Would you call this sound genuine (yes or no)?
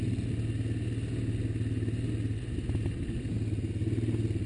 yes